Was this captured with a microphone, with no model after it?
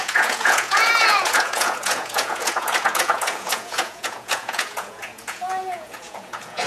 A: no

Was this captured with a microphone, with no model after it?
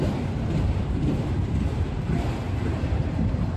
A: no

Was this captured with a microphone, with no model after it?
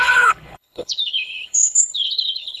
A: no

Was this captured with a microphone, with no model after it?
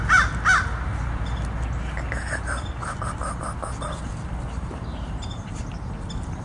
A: yes